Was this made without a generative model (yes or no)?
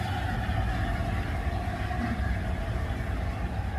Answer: yes